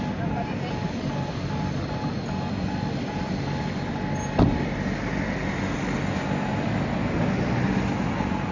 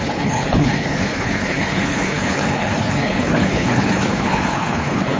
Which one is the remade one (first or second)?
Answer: second